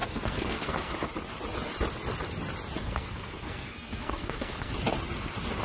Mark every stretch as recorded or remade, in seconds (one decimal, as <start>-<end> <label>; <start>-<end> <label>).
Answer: 0.0-0.9 remade; 0.9-2.8 recorded; 2.8-4.7 remade; 4.7-5.6 recorded